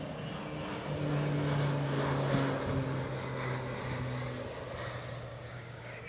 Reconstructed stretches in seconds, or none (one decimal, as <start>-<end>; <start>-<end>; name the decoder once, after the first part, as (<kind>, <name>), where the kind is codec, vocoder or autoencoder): 5.3-6.1 (codec, DAC)